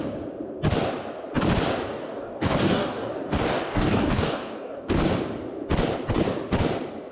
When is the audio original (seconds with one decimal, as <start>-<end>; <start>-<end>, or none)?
0.0-1.9; 4.9-7.1